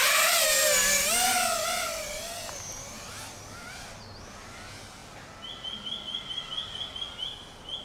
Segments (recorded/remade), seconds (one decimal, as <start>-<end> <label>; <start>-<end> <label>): 0.0-7.8 recorded

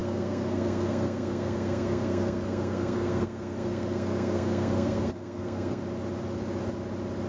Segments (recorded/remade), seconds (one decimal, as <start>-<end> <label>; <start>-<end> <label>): 0.0-5.8 remade; 5.8-7.3 recorded

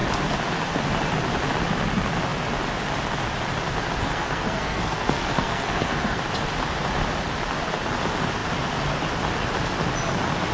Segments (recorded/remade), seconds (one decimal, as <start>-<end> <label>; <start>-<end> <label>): 0.0-4.0 recorded; 4.0-6.2 remade; 6.2-10.5 recorded

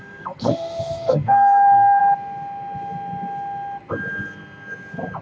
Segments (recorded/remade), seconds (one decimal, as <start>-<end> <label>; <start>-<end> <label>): 0.0-2.0 remade; 2.0-5.2 recorded